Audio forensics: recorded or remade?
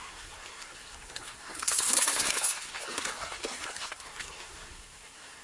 remade